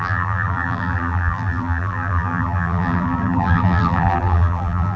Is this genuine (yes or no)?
no